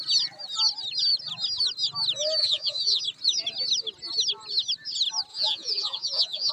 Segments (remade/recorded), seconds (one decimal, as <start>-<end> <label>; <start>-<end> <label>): 0.0-2.4 recorded; 2.4-3.0 remade; 3.0-5.3 recorded; 5.3-6.5 remade